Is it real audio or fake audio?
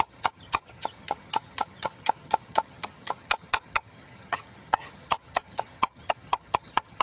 fake